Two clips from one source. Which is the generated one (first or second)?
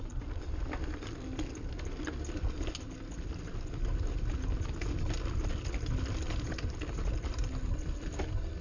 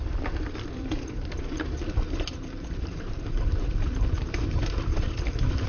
second